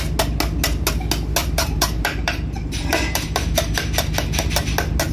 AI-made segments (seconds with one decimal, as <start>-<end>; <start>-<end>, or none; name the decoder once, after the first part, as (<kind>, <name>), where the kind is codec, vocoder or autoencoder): 1.4-4.5 (vocoder, BigVGAN v2)